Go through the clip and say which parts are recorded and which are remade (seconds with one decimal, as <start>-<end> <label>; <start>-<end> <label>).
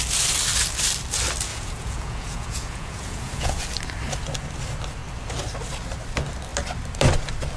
0.0-1.5 recorded; 1.5-3.6 remade; 3.6-7.6 recorded